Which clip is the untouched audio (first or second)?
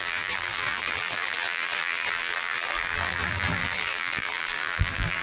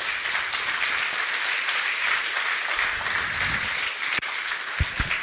second